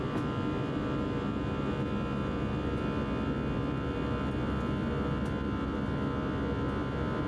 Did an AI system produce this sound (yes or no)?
no